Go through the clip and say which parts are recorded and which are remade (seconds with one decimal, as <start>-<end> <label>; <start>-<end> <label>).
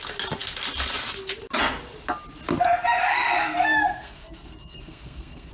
0.0-3.1 recorded; 3.1-5.5 remade